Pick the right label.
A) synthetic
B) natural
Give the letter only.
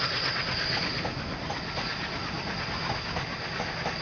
B